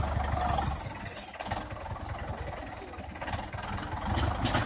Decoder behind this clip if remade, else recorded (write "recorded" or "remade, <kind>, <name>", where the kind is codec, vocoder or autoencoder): recorded